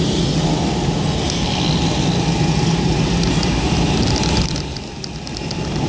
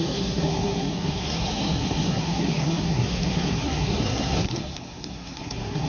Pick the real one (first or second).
first